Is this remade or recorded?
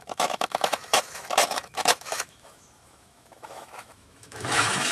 remade